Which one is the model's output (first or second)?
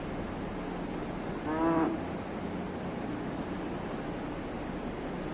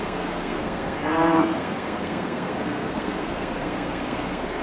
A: second